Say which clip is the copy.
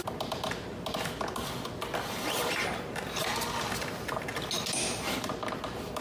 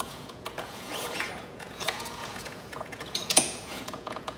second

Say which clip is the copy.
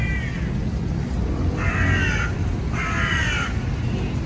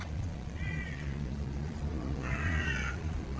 second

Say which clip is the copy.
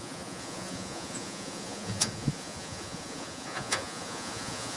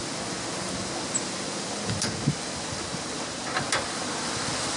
first